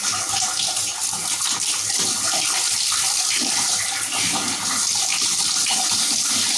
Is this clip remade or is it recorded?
recorded